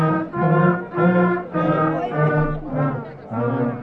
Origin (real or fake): real